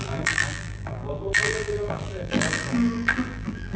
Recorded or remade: remade